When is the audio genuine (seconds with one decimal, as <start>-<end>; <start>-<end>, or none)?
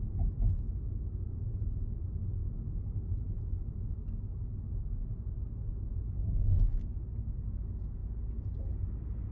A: 0.0-9.3